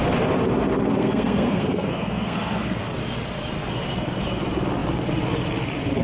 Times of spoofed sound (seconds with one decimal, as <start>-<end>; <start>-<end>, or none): 1.0-2.8